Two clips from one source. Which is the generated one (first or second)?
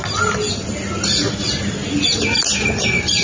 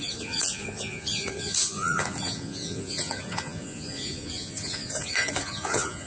second